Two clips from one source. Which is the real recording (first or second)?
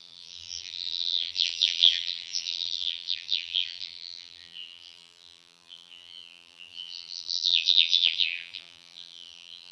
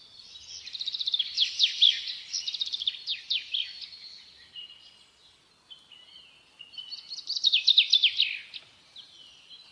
second